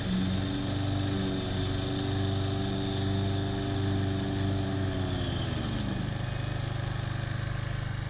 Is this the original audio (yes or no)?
yes